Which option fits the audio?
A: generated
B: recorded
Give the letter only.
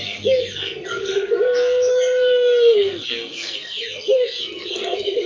A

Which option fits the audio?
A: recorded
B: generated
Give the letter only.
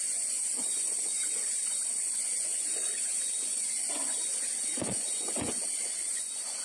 B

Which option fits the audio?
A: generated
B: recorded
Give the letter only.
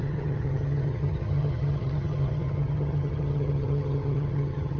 A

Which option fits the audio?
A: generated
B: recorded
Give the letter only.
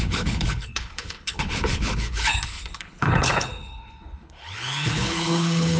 A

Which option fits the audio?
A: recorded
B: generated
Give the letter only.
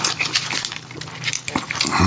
A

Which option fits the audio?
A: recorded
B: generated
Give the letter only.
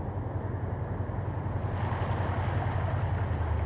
A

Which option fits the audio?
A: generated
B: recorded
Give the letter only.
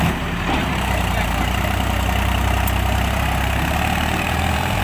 A